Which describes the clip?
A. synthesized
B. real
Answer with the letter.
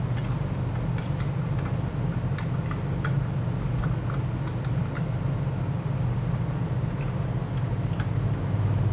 B